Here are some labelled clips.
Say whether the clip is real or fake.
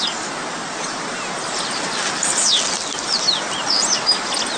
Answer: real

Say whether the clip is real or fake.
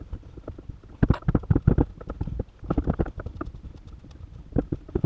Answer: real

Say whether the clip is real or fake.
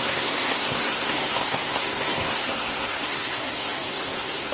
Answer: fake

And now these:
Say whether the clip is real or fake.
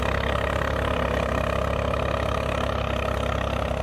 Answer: real